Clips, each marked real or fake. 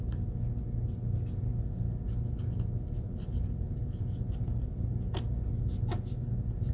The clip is real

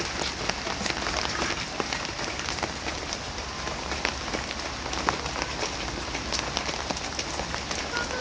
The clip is real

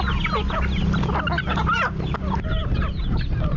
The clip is real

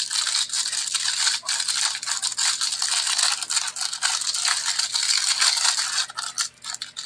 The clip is real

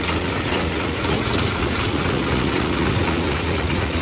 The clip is fake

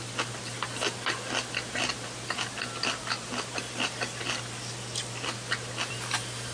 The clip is real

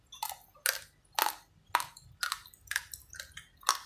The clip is real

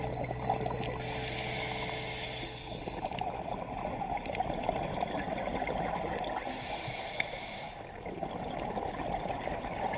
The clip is real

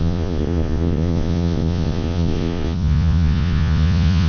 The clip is fake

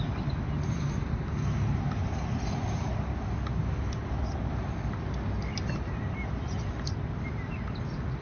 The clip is real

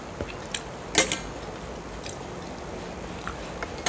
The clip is real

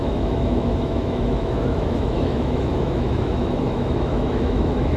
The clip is fake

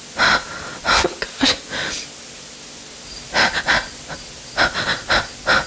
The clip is real